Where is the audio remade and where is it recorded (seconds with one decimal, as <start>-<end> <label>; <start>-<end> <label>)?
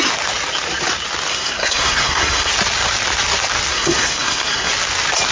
0.0-1.3 recorded; 1.3-2.5 remade; 2.5-3.7 recorded; 3.7-4.7 remade; 4.7-5.3 recorded